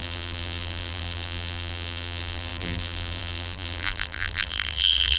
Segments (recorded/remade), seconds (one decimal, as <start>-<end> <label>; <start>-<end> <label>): 0.0-5.2 remade